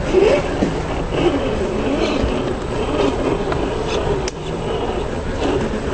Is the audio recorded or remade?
recorded